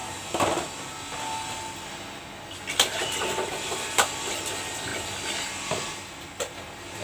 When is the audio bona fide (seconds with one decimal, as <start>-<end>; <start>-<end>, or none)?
0.0-7.0